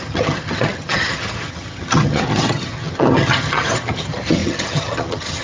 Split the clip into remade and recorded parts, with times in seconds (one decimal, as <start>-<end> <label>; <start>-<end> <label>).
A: 0.0-5.4 remade